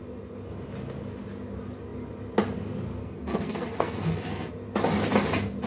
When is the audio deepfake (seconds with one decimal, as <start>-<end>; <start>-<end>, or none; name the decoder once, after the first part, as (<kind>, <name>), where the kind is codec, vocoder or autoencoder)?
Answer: 3.0-4.5 (codec, SNAC)